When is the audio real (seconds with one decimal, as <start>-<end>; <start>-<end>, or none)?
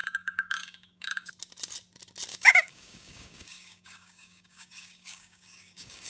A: 1.3-2.3